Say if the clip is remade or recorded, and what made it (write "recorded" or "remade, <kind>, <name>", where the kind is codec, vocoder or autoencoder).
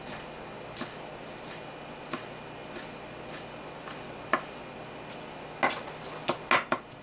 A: recorded